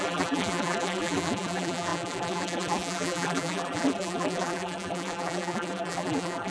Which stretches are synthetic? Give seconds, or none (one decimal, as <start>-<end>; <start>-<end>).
0.0-6.5